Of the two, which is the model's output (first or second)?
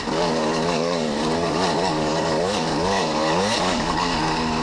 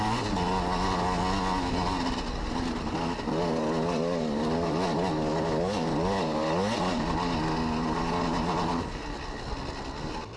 first